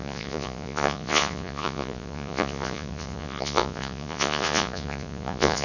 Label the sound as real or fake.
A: fake